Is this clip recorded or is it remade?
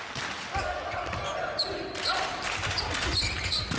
recorded